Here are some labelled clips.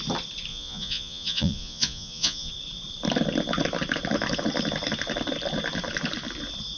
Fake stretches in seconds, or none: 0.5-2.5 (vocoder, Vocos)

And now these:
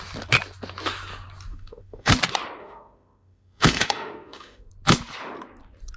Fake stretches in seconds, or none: 1.5-2.1 (autoencoder, DAC-VAE); 2.6-4.7

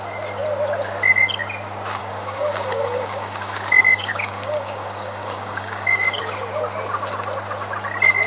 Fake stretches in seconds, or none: 2.0-6.2 (codec, DAC)

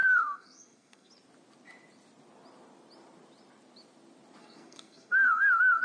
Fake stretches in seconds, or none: 0.0-1.1 (codec, SNAC); 4.4-5.8

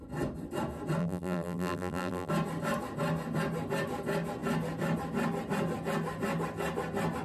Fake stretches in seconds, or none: 1.0-2.3 (vocoder, BigVGAN v2)

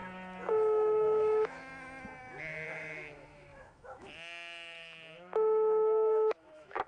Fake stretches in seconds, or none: 0.5-1.7 (autoencoder, DAC-VAE); 2.4-6.9

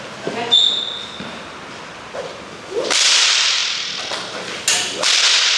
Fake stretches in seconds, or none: none